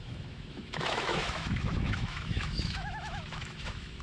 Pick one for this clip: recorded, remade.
remade